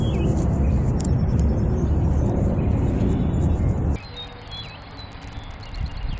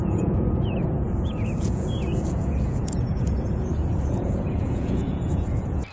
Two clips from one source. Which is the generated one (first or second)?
second